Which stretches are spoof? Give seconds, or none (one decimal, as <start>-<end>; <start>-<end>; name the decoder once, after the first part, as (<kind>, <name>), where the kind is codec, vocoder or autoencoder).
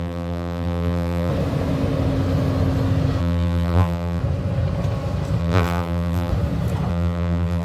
0.0-1.3 (vocoder, BigVGAN v2); 3.2-4.2; 5.4-6.3; 6.9-7.6